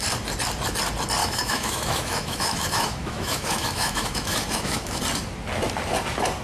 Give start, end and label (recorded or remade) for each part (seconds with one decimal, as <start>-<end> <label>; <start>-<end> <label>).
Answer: 0.0-1.2 recorded; 1.2-5.0 remade; 5.0-6.4 recorded